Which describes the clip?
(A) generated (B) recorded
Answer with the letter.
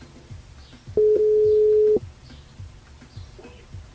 B